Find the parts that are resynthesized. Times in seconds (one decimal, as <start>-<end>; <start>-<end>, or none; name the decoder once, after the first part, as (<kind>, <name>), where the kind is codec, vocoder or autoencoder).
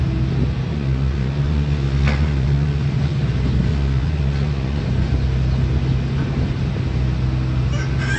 0.7-3.2 (vocoder, Vocos); 3.7-4.8